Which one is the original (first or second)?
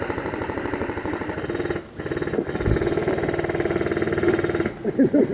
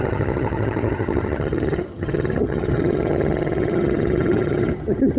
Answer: first